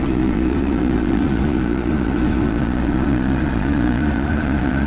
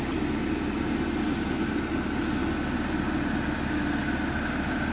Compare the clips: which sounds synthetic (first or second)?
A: first